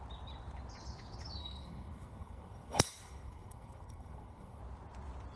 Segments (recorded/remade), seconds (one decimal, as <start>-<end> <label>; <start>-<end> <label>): 0.0-1.4 recorded; 1.4-4.6 remade; 4.6-5.4 recorded